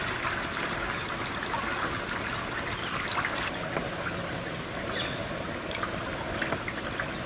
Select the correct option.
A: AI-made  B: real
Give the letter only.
B